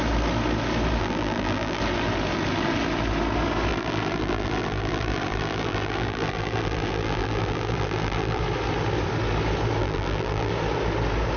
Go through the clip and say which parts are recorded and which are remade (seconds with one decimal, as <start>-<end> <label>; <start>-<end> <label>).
0.0-1.0 recorded; 1.0-1.8 remade; 1.8-3.7 recorded; 3.7-8.4 remade; 8.4-9.8 recorded; 9.8-10.5 remade; 10.5-11.4 recorded